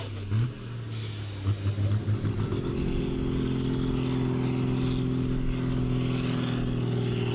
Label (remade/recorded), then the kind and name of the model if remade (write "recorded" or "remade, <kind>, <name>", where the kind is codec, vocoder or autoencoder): recorded